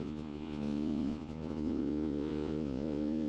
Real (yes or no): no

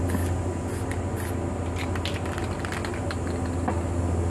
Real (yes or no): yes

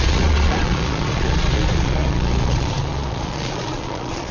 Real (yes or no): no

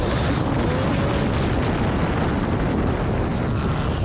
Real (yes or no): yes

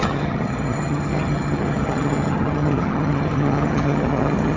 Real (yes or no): no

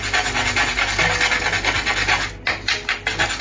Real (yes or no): yes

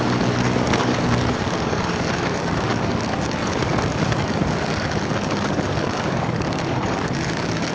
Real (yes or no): no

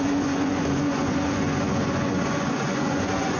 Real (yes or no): no